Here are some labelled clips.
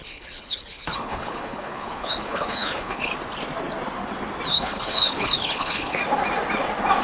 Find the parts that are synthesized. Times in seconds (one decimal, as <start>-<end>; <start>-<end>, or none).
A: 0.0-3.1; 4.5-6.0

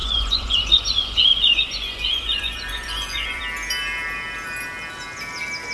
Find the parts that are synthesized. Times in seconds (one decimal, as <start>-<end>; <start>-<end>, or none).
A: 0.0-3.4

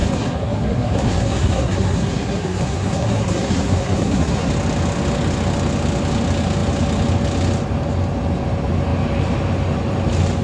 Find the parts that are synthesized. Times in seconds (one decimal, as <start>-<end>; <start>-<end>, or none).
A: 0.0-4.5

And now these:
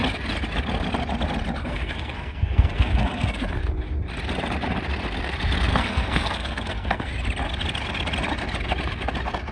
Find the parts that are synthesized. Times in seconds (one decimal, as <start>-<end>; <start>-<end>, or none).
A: 1.6-3.6; 5.7-7.1

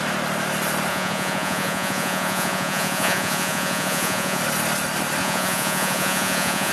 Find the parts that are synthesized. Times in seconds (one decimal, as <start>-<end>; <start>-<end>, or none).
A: 0.9-4.4; 5.2-6.7

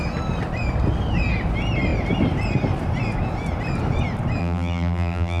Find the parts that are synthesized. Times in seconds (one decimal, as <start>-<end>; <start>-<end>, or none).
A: 4.4-5.4